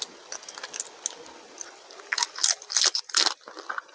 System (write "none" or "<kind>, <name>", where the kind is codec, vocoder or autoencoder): none